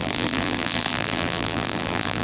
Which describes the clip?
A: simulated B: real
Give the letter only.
A